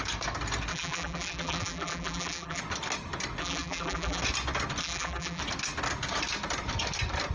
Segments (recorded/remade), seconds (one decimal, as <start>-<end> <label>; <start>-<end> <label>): 0.0-0.7 recorded; 0.7-2.6 remade; 2.6-3.4 recorded; 3.4-4.2 remade; 4.2-4.8 recorded; 4.8-5.4 remade; 5.4-7.3 recorded